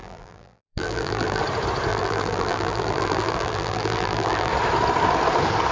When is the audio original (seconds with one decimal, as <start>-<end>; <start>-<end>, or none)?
1.4-1.9; 4.5-5.7